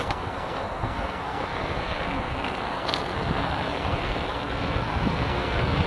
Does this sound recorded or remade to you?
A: remade